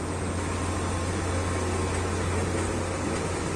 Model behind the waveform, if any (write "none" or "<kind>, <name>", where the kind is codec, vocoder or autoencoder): none